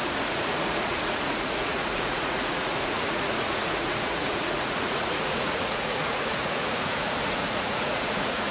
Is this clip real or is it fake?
fake